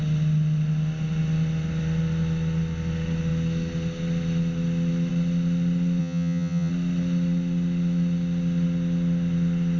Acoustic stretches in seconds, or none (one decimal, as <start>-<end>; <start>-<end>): 0.0-6.0; 6.7-9.8